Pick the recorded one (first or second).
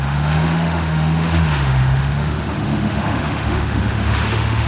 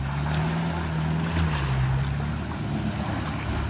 second